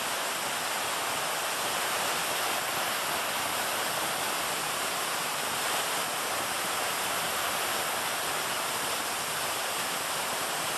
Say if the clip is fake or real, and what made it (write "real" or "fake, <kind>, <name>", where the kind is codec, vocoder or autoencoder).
real